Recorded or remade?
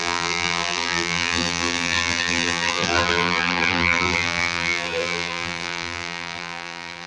remade